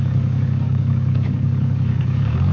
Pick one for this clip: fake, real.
fake